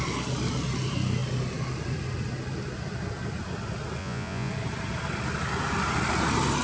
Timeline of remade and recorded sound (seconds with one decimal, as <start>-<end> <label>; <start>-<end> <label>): 0.0-4.0 recorded; 4.0-4.5 remade; 4.5-6.6 recorded